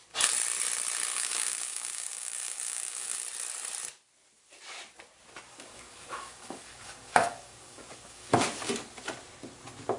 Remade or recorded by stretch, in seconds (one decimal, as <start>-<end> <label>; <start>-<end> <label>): 0.0-1.1 recorded; 1.1-3.2 remade; 3.2-5.5 recorded; 5.5-8.3 remade; 8.3-10.0 recorded